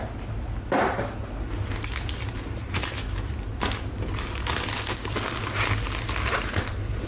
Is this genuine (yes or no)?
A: yes